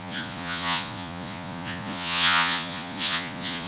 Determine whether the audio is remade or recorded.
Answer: remade